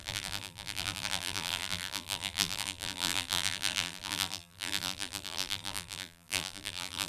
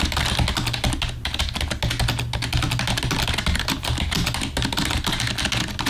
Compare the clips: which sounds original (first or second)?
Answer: second